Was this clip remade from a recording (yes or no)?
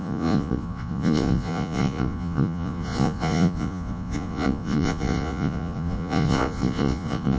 yes